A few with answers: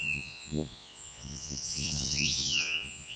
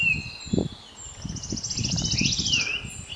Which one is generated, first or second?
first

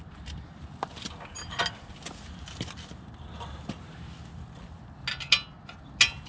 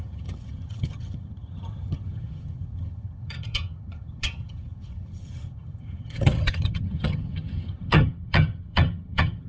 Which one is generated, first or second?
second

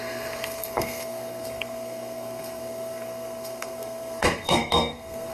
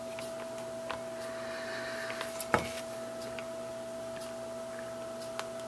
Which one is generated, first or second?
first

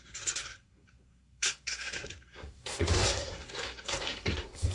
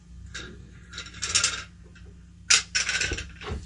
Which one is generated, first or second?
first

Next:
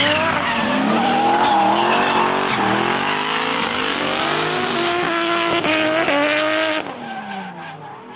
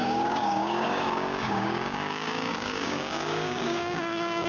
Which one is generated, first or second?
second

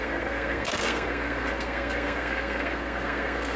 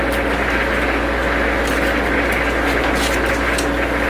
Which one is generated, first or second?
first